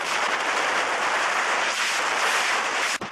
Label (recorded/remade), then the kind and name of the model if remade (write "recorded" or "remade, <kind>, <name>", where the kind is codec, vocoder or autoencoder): remade, vocoder, BigVGAN v2